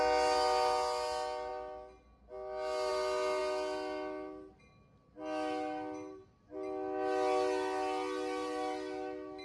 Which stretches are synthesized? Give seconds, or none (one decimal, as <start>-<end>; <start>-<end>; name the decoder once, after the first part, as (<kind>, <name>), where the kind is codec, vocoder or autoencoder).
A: none